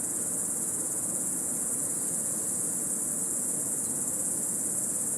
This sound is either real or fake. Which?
fake